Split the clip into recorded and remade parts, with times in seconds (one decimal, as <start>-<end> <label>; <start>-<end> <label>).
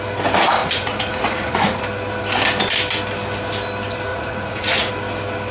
0.0-0.6 recorded; 0.6-1.8 remade; 1.8-4.1 recorded; 4.1-4.9 remade; 4.9-5.5 recorded